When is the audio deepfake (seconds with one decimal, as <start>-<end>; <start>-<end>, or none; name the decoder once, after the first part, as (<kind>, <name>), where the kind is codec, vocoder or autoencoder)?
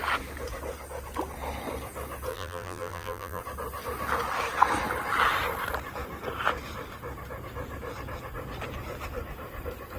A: 2.3-3.4 (vocoder, BigVGAN v2)